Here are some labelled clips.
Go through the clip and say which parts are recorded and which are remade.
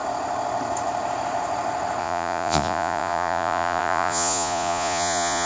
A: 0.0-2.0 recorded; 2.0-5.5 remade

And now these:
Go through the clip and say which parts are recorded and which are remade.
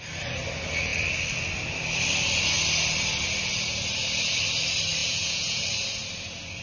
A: 0.0-5.0 recorded; 5.0-5.6 remade; 5.6-6.6 recorded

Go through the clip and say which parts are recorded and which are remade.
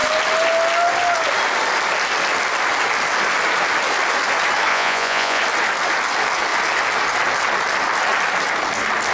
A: 0.0-4.7 recorded; 4.7-5.4 remade; 5.4-9.1 recorded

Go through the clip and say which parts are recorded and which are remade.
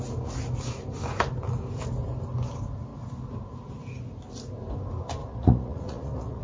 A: 0.0-5.2 recorded; 5.2-6.4 remade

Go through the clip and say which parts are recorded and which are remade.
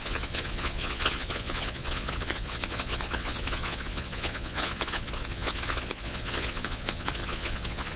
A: 0.0-8.0 remade